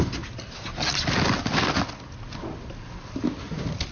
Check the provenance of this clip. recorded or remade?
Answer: recorded